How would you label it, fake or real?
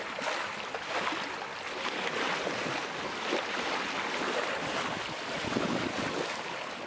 real